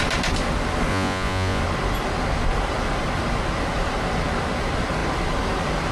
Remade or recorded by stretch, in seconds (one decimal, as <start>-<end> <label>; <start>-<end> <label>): 0.0-0.9 recorded; 0.9-1.6 remade; 1.6-5.9 recorded